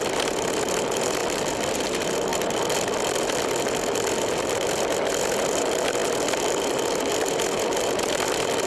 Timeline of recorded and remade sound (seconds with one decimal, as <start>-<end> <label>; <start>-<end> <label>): 0.0-1.2 remade; 1.2-1.9 recorded; 1.9-2.3 remade; 2.3-4.2 recorded; 4.2-8.7 remade